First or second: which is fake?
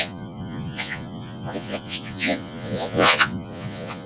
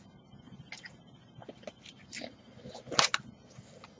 first